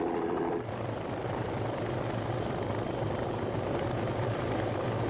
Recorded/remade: remade